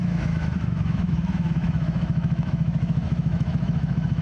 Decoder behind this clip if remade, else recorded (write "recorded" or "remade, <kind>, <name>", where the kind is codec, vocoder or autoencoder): remade, autoencoder, DAC-VAE